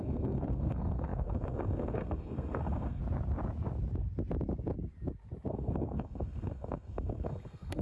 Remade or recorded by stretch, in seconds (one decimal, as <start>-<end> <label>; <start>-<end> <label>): 0.0-3.0 remade; 3.0-5.5 recorded; 5.5-7.8 remade